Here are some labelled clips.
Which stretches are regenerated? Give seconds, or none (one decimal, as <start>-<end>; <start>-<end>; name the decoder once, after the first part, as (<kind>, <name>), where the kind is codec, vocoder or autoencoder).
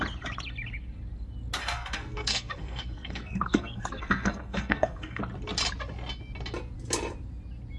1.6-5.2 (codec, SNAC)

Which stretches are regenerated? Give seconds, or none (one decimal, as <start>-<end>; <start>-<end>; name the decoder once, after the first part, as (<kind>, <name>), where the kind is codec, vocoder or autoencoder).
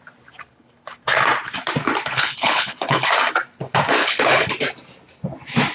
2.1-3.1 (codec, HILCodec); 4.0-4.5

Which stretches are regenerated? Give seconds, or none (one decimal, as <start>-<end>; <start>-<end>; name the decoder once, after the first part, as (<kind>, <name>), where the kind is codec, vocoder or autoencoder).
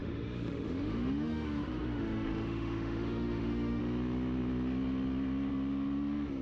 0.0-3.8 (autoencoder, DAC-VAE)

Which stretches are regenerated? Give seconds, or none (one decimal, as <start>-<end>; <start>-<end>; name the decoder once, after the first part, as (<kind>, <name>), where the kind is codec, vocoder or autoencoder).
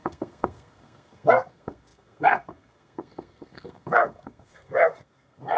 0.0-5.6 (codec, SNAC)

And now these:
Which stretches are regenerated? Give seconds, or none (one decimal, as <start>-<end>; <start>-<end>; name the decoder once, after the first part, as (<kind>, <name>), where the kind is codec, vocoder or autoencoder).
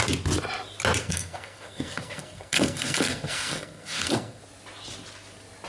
1.0-4.4 (codec, SNAC)